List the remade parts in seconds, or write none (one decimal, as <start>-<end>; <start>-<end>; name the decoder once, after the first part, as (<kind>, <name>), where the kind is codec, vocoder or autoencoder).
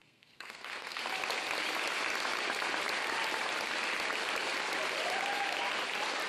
0.0-1.0 (codec, SNAC)